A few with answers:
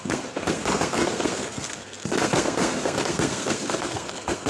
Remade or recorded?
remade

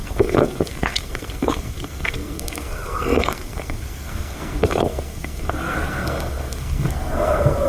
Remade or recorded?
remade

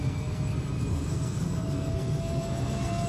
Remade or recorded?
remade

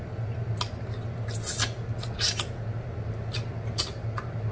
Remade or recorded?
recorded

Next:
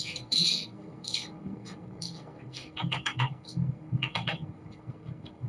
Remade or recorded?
remade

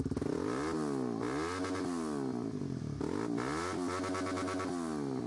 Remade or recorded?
recorded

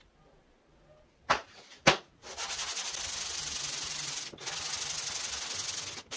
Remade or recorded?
recorded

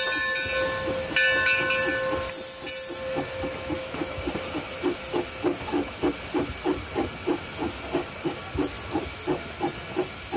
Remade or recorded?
recorded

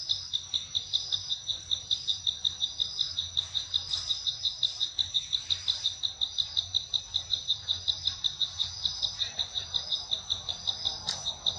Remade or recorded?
recorded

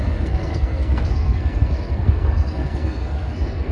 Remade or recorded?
remade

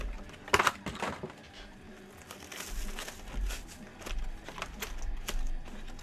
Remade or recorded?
recorded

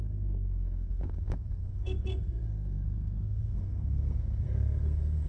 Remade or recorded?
remade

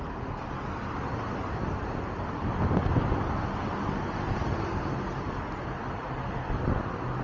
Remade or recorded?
recorded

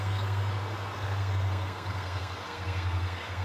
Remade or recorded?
remade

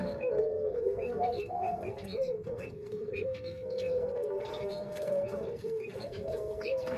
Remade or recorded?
remade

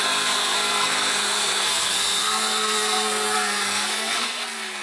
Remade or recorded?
remade